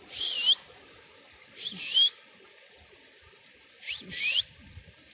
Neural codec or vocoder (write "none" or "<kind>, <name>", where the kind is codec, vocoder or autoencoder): vocoder, BigVGAN v2